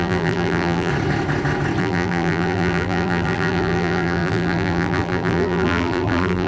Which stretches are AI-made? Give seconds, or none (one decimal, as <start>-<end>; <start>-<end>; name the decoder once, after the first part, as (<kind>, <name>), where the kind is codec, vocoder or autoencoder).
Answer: 0.0-0.9 (vocoder, BigVGAN v2); 1.8-6.5